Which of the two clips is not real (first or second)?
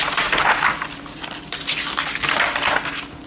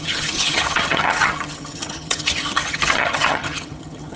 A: second